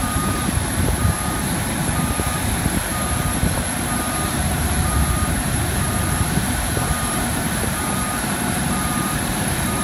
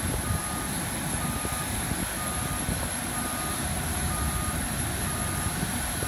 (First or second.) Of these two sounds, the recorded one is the second